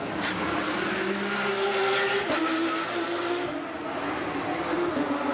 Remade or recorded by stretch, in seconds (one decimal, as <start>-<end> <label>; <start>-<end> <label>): 0.0-5.3 recorded